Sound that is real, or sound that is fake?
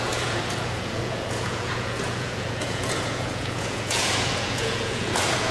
fake